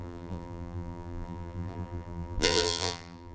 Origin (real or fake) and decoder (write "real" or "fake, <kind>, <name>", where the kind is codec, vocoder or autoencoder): fake, vocoder, BigVGAN v2